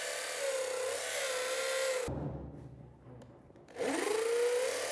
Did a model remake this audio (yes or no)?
no